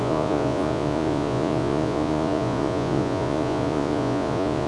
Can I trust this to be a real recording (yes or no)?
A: no